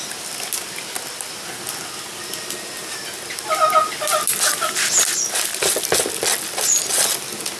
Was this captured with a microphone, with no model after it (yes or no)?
yes